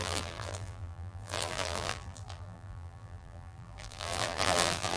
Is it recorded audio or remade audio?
remade